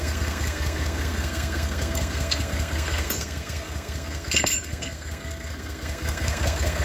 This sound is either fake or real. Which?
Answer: fake